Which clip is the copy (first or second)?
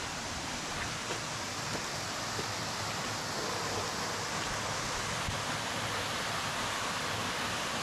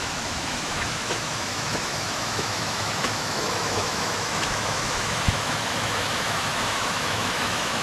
second